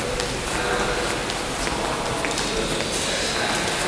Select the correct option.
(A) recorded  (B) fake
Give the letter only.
A